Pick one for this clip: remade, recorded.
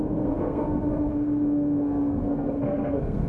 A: remade